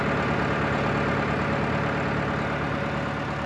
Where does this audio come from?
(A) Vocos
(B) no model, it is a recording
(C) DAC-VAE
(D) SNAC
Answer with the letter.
B